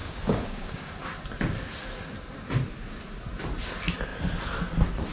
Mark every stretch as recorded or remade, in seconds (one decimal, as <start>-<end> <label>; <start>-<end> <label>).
0.0-0.9 remade; 0.9-5.1 recorded